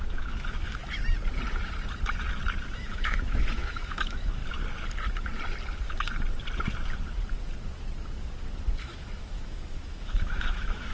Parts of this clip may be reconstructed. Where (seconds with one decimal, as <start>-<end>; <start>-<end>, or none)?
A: 0.0-1.0; 2.7-4.4; 8.8-10.9